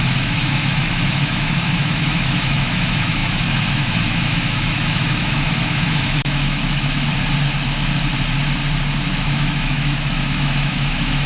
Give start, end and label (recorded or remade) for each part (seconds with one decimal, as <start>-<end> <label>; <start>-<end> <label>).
0.0-7.1 remade; 7.1-9.0 recorded; 9.0-11.3 remade